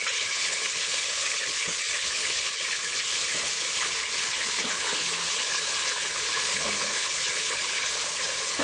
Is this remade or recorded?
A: remade